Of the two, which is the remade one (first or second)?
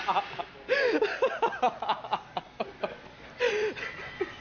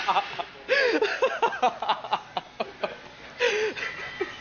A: first